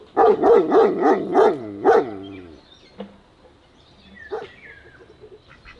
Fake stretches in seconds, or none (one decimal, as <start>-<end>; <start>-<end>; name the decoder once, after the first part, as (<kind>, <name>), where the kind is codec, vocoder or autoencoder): none